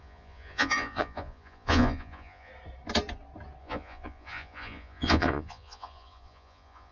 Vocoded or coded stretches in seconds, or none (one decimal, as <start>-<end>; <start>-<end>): 0.0-2.5; 3.6-6.9